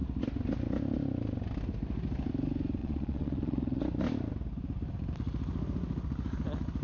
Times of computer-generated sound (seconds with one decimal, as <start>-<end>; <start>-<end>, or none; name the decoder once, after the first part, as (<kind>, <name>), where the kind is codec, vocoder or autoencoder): 2.8-3.8 (vocoder, Vocos)